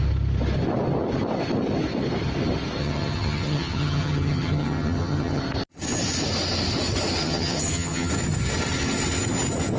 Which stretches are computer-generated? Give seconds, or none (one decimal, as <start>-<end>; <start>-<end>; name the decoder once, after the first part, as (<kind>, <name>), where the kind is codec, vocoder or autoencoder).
2.8-5.4 (vocoder, HiFi-GAN); 7.2-8.1